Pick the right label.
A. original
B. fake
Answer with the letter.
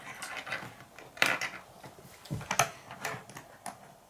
A